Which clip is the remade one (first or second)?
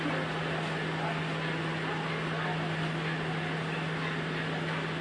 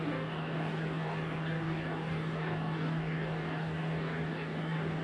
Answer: second